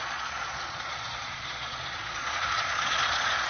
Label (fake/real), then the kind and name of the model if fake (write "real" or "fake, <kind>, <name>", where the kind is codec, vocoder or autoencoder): fake, vocoder, Vocos